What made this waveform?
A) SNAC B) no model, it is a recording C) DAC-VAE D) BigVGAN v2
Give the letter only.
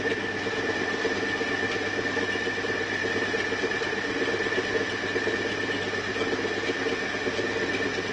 B